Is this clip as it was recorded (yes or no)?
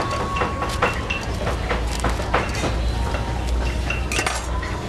yes